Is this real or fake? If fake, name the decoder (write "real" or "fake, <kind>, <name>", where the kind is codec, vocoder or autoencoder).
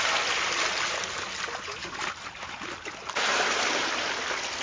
real